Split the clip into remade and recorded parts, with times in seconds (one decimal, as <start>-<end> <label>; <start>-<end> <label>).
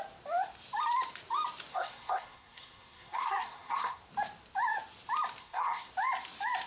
0.0-1.7 recorded; 1.7-4.0 remade; 4.0-5.4 recorded; 5.4-5.9 remade; 5.9-6.7 recorded